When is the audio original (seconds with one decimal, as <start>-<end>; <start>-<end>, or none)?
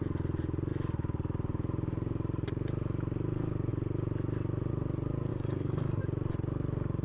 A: 0.0-5.3; 6.0-7.0